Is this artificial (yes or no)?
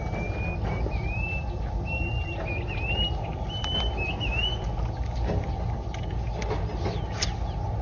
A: no